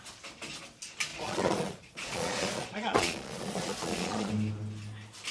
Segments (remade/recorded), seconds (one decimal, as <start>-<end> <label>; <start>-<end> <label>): 0.0-1.1 recorded; 1.1-4.3 remade; 4.3-5.3 recorded